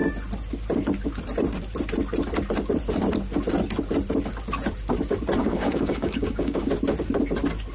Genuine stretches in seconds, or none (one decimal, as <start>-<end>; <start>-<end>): 0.0-5.4; 6.7-7.7

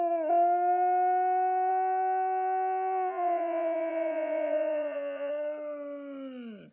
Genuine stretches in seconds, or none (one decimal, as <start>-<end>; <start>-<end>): 0.0-1.7; 5.3-6.7

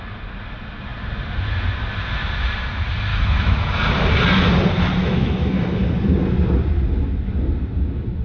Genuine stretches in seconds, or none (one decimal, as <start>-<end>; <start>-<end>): 0.0-3.1; 3.7-5.0; 5.8-8.2

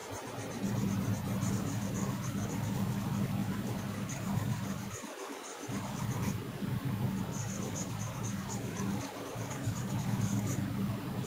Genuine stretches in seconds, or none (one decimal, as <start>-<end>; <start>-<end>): 0.0-1.5

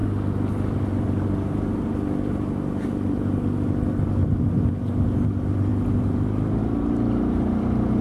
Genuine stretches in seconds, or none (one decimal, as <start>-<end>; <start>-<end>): 0.0-8.0

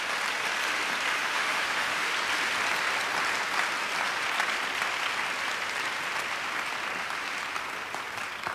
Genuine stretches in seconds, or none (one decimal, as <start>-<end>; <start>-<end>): 0.0-1.2; 2.1-8.5

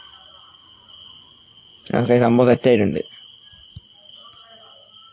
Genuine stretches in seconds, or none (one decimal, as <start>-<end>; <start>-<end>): 0.0-0.7; 2.6-5.1

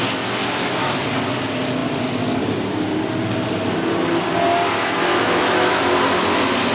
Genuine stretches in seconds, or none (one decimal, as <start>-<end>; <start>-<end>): 0.0-0.4; 1.0-5.1; 5.8-6.7